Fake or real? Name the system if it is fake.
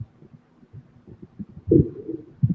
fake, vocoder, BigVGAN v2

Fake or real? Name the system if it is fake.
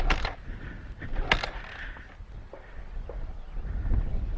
real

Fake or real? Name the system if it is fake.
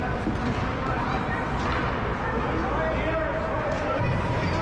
real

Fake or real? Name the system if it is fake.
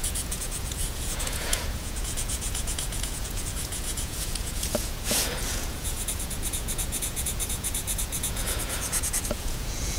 fake, vocoder, Vocos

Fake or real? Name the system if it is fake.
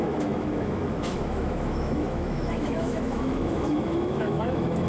fake, autoencoder, DAC-VAE